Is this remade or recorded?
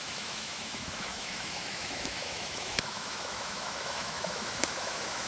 remade